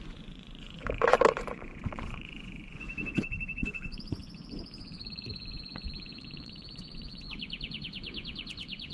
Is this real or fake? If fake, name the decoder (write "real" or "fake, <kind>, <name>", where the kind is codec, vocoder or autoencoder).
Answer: fake, vocoder, Vocos